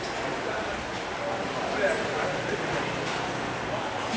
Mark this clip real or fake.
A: real